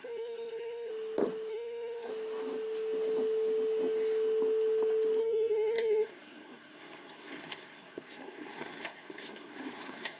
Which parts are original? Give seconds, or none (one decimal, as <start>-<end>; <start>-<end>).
0.9-1.5; 2.1-5.2